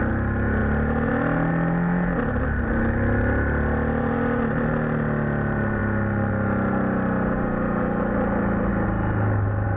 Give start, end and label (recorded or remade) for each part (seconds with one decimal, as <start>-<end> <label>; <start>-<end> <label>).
0.0-9.8 recorded